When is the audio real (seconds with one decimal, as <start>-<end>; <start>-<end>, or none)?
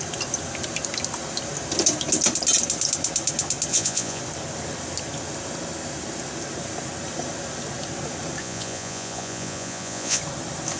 0.0-3.7; 4.2-8.4; 10.2-10.8